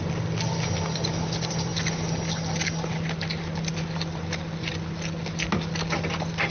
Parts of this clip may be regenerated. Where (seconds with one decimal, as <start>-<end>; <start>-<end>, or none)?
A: none

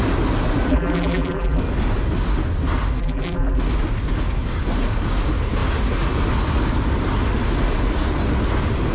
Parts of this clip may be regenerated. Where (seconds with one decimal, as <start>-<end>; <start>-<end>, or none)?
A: 0.7-1.6; 3.0-3.6

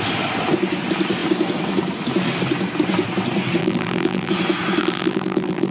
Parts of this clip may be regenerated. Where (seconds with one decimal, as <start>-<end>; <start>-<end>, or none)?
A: 3.6-4.3; 4.8-5.7

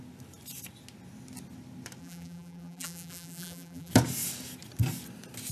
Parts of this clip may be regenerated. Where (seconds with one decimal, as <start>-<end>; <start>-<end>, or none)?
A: 2.0-3.9